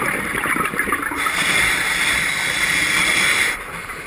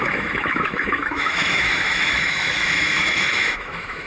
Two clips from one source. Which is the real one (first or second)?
first